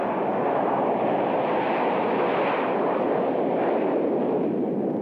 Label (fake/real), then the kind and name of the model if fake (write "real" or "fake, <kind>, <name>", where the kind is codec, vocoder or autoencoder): real